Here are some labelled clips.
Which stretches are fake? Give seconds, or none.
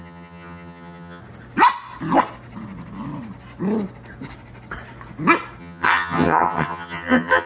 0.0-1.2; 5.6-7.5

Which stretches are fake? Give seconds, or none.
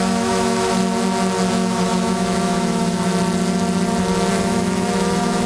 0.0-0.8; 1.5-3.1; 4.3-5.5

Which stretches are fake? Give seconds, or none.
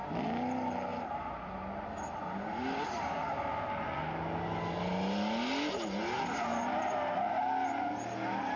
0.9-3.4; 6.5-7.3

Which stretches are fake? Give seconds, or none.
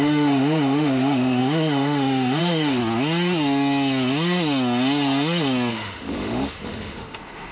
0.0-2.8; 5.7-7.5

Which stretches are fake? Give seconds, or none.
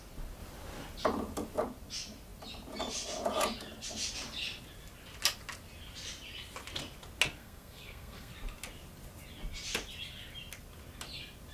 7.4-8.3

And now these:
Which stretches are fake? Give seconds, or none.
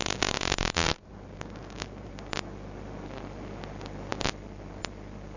0.0-2.1